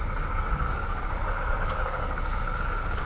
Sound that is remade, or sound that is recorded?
remade